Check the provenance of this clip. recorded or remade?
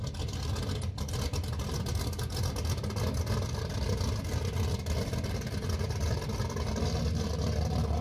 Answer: recorded